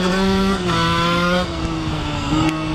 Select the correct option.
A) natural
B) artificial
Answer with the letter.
B